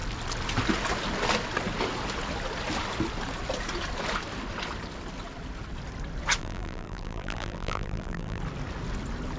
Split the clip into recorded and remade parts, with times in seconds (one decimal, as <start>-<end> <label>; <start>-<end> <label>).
0.0-6.4 recorded; 6.4-8.4 remade; 8.4-9.4 recorded